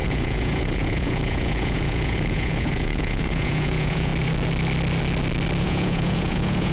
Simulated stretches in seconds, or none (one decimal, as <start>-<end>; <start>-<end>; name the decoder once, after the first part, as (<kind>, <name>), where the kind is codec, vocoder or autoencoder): 0.0-4.1 (vocoder, Vocos); 5.6-6.7